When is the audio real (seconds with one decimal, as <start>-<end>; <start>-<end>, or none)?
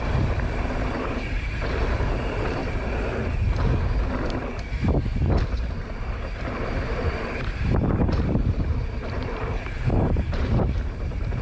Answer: 2.6-6.4